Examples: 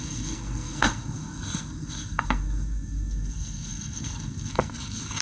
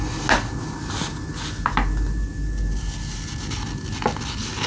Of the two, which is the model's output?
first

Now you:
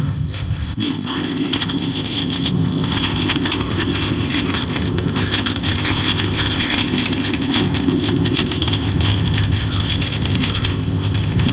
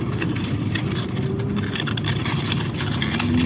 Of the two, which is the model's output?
first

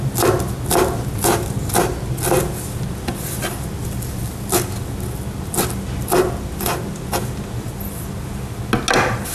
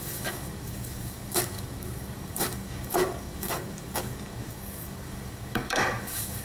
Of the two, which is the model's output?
second